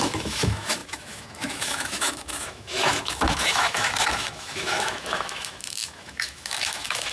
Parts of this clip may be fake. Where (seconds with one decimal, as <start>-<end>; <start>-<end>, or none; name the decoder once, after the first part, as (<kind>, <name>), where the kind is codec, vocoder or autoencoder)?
0.0-7.1 (autoencoder, DAC-VAE)